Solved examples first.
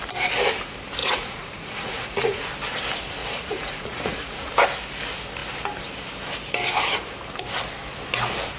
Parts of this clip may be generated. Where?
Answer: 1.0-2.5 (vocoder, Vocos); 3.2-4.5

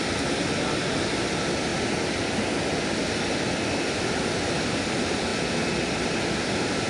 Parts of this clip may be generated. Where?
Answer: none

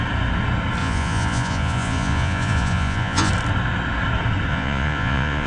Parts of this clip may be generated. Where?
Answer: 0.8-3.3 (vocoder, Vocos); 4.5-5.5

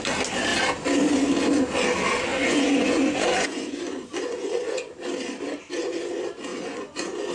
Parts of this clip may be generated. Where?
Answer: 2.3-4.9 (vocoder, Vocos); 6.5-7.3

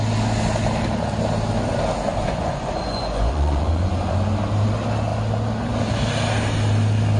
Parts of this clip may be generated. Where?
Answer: 2.2-3.9 (vocoder, Vocos)

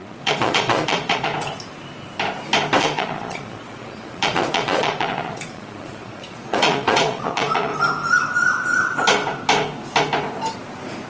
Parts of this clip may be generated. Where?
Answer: 0.0-1.3 (vocoder, Vocos); 2.8-7.7

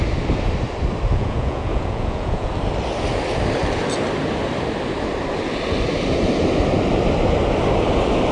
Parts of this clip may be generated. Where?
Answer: 1.1-2.5 (vocoder, Vocos)

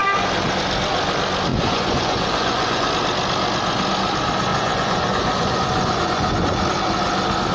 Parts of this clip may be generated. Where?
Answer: 1.5-2.9 (vocoder, Vocos); 4.5-6.6